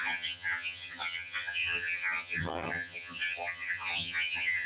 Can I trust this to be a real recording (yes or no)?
no